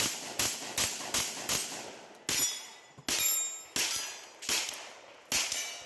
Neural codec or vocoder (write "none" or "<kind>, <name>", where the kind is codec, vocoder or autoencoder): none